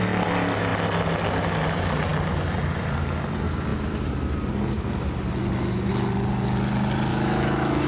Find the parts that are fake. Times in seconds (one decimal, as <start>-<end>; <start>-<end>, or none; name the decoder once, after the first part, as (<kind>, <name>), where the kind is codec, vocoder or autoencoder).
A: 7.1-7.9 (autoencoder, DAC-VAE)